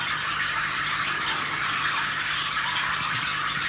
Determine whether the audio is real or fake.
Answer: real